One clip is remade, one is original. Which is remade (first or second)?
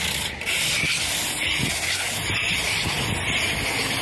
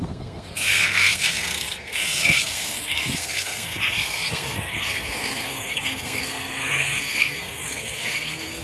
second